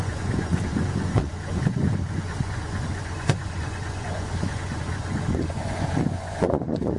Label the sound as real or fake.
fake